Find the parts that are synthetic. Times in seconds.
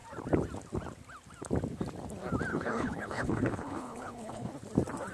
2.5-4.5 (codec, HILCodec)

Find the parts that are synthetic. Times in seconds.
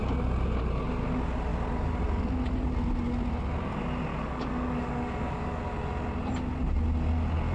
4.1-5.6 (codec, DAC)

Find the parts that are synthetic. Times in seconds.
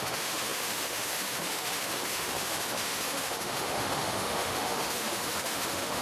0.0-6.0 (autoencoder, DAC-VAE)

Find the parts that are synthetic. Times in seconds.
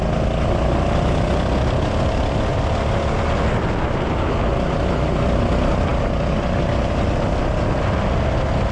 none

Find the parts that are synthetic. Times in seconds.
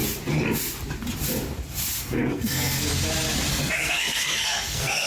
2.0-2.9 (codec, SNAC); 3.5-5.1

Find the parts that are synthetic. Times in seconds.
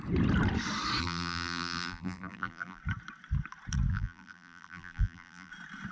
1.0-2.8 (vocoder, BigVGAN v2); 3.9-5.5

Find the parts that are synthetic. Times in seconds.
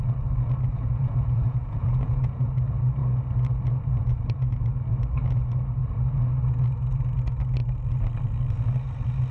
0.7-2.5 (vocoder, Vocos)